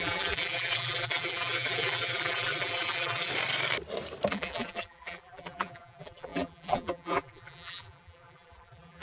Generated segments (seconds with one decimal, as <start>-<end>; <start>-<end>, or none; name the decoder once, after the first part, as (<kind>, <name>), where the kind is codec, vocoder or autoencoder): 0.0-3.3 (vocoder, BigVGAN v2); 4.3-9.0